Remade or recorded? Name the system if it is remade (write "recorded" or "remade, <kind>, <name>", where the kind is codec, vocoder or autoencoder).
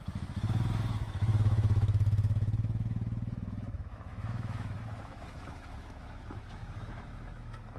remade, autoencoder, DAC-VAE